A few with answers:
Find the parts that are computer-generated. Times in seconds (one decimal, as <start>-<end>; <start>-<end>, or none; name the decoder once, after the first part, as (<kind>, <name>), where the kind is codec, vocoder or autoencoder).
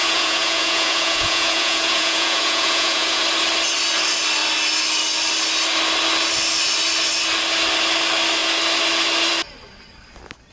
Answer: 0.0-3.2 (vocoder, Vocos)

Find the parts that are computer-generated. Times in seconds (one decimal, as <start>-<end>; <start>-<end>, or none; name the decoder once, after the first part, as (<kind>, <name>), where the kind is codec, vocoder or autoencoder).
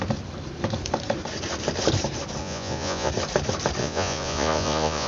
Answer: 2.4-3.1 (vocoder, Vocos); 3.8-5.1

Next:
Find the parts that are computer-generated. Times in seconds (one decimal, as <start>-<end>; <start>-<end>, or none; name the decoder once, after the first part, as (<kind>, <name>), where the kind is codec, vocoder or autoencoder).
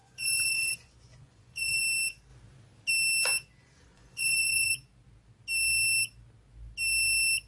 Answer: 0.0-1.8 (vocoder, Vocos); 3.6-4.7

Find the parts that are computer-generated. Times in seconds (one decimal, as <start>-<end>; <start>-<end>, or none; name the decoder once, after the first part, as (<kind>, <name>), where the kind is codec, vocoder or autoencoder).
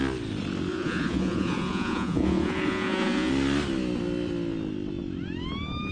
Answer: 0.7-3.3 (vocoder, Vocos)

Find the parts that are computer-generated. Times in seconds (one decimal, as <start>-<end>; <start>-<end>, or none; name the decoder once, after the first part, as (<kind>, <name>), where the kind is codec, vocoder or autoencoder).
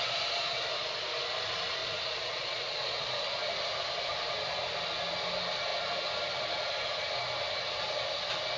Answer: 1.8-3.4 (vocoder, Vocos)